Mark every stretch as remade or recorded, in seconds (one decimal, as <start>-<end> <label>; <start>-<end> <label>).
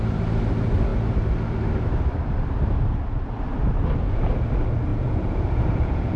0.0-4.9 recorded; 4.9-6.2 remade